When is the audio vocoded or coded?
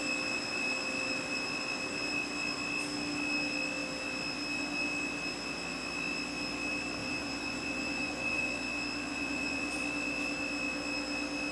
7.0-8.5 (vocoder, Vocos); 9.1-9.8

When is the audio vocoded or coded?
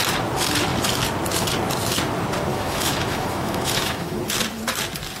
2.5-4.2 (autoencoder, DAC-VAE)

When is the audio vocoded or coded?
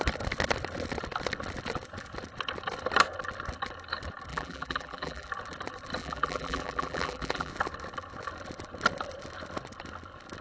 4.3-5.3 (vocoder, BigVGAN v2); 6.0-7.5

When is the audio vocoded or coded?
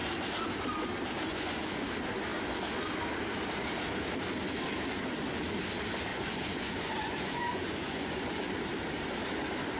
1.3-1.9 (vocoder, Vocos); 6.1-8.5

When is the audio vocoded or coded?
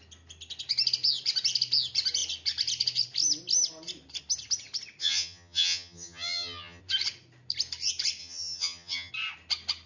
5.0-6.8 (vocoder, HiFi-GAN); 8.2-9.1